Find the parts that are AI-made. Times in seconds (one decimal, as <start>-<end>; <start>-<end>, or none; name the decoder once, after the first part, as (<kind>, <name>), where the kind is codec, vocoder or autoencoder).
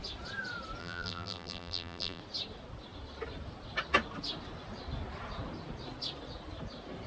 0.8-2.2 (vocoder, BigVGAN v2)